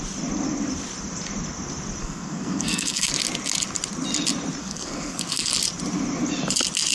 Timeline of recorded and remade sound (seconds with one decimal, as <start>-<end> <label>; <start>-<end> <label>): 0.0-2.0 recorded; 2.0-3.1 remade; 3.1-4.6 recorded; 4.6-5.5 remade; 5.5-6.9 recorded